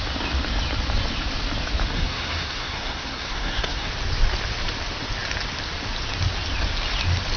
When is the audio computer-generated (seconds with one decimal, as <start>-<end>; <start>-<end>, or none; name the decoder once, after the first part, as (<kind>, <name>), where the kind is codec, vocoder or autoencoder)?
1.9-3.9 (codec, SNAC)